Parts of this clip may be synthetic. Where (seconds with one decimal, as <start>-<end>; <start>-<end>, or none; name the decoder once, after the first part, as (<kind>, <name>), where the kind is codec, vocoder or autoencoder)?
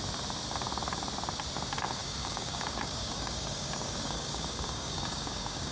2.0-5.7 (codec, DAC)